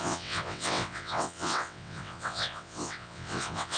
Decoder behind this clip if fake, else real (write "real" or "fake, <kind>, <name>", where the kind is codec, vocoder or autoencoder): fake, vocoder, WaveNeXt